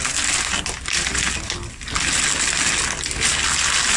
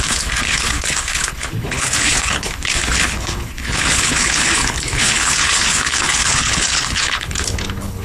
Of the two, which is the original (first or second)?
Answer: first